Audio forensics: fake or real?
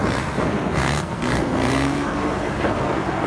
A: fake